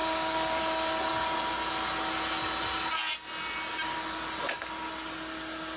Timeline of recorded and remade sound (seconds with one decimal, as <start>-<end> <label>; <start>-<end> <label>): 0.0-0.6 remade; 0.6-5.8 recorded